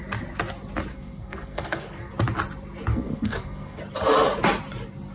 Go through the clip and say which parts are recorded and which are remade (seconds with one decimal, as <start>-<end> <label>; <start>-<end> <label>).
0.0-0.9 recorded; 0.9-2.1 remade; 2.1-2.9 recorded; 2.9-3.8 remade; 3.8-5.1 recorded